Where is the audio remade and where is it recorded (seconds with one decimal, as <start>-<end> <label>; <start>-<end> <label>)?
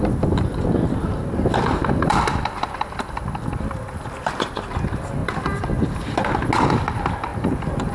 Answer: 0.0-0.5 remade; 0.5-1.8 recorded; 1.8-4.5 remade; 4.5-5.2 recorded; 5.2-5.8 remade; 5.8-7.3 recorded; 7.3-7.9 remade